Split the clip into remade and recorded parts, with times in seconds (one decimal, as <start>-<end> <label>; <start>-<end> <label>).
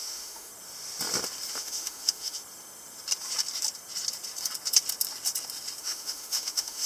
0.0-0.5 remade; 0.5-1.5 recorded; 1.5-2.4 remade; 2.4-5.8 recorded; 5.8-6.9 remade